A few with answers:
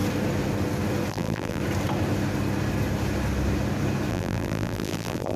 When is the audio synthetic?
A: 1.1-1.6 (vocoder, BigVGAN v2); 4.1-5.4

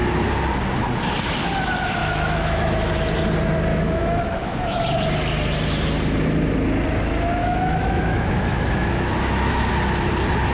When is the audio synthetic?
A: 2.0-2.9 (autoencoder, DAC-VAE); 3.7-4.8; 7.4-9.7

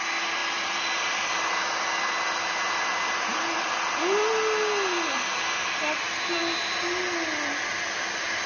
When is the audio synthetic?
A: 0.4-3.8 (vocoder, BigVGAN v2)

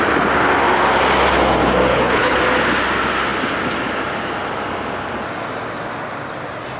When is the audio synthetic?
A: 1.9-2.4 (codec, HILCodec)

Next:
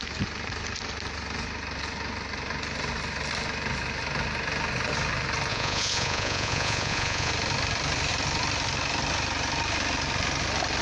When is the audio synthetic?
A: 5.5-7.3 (vocoder, Vocos)